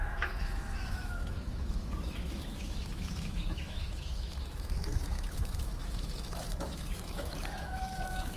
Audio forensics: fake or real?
fake